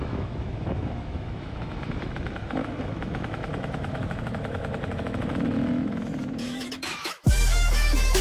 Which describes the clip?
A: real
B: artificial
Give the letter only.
B